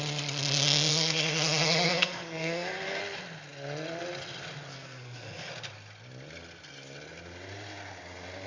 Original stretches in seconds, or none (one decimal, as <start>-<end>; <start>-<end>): 0.0-0.9; 3.0-4.7; 5.5-8.5

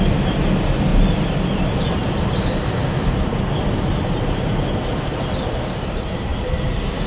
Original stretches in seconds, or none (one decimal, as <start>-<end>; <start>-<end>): 0.0-7.1

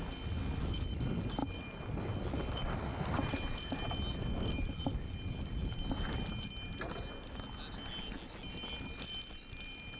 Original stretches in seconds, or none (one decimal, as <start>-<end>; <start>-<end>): 0.0-10.0

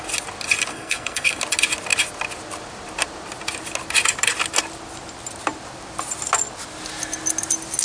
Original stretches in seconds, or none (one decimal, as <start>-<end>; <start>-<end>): 0.0-0.7; 1.4-7.8

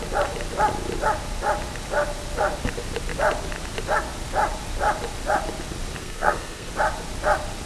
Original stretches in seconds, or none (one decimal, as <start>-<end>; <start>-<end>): 0.0-6.0; 6.7-7.7

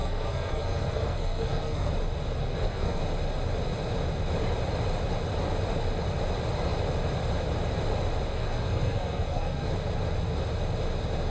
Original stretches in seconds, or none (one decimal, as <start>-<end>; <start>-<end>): 1.9-2.4; 3.0-8.3; 9.7-11.3

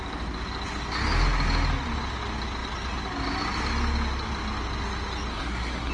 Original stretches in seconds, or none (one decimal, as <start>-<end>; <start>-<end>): 0.0-5.3